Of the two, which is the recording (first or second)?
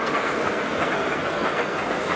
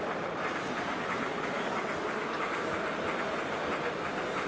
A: second